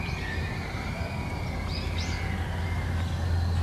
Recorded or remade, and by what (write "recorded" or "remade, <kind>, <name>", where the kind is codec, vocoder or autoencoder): recorded